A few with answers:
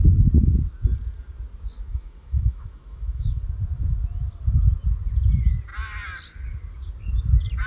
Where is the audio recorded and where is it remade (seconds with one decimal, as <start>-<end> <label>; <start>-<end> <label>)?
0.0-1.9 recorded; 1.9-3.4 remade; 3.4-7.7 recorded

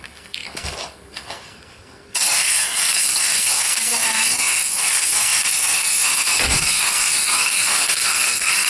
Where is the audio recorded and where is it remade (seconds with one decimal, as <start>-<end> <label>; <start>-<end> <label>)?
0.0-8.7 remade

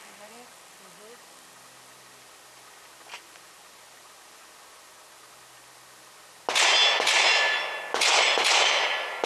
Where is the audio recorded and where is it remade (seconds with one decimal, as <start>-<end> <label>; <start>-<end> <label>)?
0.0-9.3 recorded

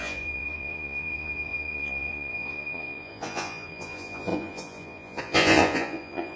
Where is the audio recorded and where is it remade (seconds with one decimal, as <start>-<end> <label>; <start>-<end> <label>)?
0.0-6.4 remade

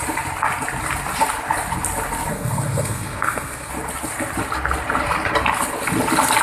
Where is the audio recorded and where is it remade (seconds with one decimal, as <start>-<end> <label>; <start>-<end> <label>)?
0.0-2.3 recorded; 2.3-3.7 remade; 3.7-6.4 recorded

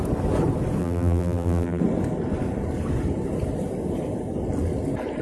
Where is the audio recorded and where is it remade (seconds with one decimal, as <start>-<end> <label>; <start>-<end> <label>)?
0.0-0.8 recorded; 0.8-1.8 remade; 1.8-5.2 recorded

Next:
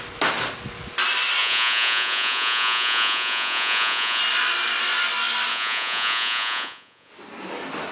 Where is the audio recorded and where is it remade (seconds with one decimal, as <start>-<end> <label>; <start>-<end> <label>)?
0.0-1.4 recorded; 1.4-4.2 remade; 4.2-5.5 recorded; 5.5-7.1 remade; 7.1-7.9 recorded

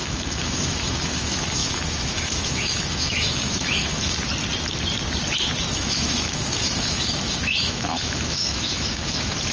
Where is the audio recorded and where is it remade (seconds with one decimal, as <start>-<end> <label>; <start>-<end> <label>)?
0.0-4.3 remade; 4.3-5.7 recorded; 5.7-9.5 remade